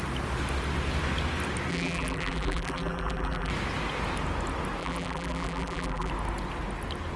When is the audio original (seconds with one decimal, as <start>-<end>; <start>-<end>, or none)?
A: 0.0-1.7; 3.5-4.8; 6.1-7.2